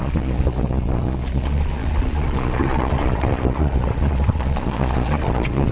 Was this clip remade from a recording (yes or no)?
yes